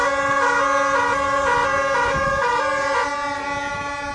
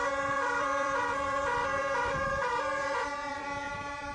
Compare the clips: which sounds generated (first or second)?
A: second